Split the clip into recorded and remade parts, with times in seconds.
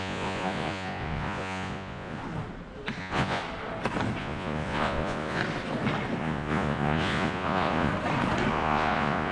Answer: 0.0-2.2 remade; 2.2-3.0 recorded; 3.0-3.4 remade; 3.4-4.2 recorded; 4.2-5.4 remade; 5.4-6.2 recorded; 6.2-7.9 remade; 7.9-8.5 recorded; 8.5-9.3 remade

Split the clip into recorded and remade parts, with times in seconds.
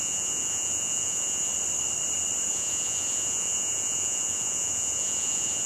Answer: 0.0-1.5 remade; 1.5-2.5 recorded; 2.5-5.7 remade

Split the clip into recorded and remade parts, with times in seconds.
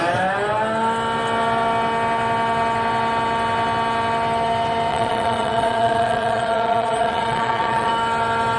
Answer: 0.0-4.9 recorded; 4.9-7.9 remade; 7.9-8.6 recorded